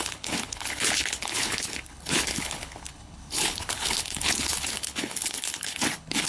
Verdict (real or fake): fake